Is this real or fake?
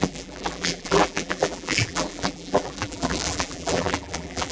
fake